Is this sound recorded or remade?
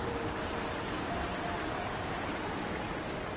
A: remade